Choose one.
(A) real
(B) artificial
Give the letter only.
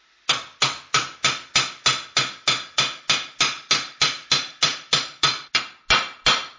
A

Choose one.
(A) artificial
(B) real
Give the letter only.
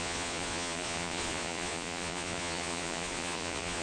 A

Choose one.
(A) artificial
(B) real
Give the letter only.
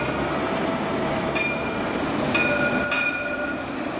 B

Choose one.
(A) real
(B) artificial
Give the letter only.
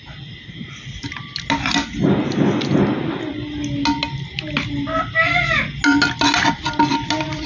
A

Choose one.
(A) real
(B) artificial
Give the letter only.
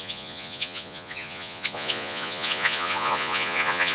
B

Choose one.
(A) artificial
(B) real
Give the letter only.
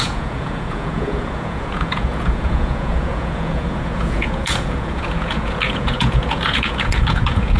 A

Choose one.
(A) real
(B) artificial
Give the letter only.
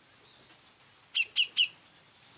A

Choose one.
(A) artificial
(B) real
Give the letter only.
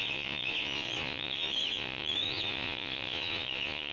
A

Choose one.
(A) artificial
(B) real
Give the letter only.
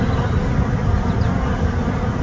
B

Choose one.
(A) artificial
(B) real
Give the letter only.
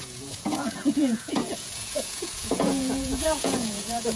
A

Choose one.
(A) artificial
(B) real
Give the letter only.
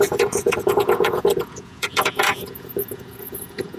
A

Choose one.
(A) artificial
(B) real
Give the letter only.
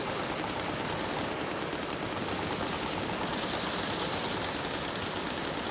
B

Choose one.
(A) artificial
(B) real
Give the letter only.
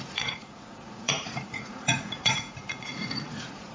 A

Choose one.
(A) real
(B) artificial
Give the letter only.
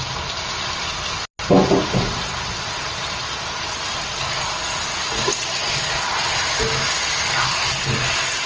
A